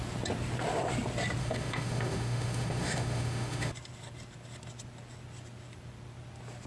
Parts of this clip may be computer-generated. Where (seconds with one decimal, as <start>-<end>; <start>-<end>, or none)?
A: 1.4-3.7